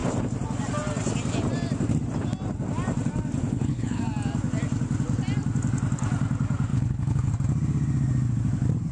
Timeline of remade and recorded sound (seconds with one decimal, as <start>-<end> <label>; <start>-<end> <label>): 0.0-3.4 recorded; 3.4-4.0 remade; 4.0-6.7 recorded; 6.7-7.3 remade; 7.3-8.9 recorded